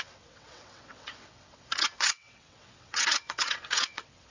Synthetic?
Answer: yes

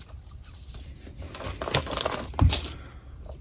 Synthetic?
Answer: no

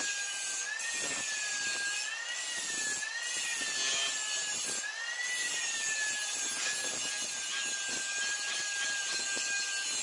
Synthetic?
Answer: no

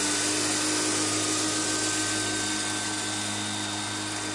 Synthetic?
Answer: no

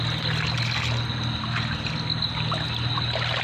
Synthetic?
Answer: no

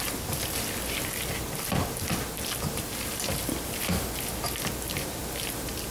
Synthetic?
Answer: no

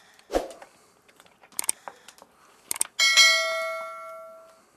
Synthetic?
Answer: no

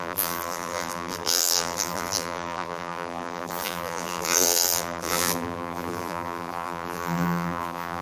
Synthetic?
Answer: yes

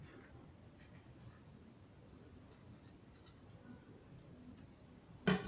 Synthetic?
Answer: no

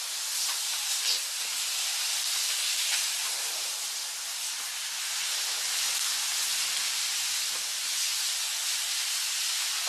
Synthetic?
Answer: no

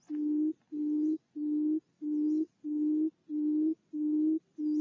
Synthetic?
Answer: no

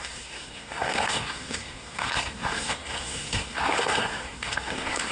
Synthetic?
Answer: yes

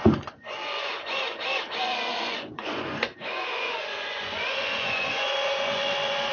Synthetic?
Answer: yes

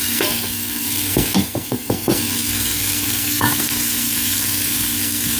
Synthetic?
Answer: yes